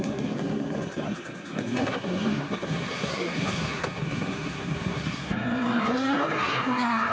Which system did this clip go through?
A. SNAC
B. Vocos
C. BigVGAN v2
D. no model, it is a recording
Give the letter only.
A